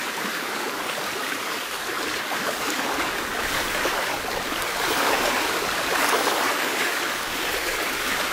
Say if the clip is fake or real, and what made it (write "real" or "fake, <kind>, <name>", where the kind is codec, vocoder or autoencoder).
fake, codec, DAC